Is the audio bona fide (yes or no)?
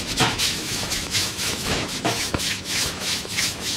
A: no